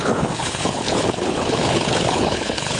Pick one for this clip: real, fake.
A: fake